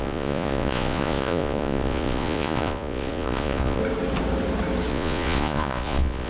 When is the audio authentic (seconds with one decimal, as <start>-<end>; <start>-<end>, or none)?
3.8-4.9